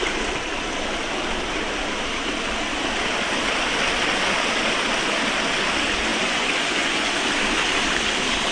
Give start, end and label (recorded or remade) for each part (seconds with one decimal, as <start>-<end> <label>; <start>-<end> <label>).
0.0-6.1 recorded; 6.1-7.1 remade; 7.1-8.5 recorded